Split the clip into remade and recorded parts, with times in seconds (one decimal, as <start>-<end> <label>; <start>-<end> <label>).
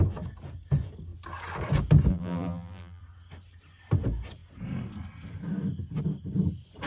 0.0-2.1 recorded; 2.1-3.0 remade; 3.0-6.9 recorded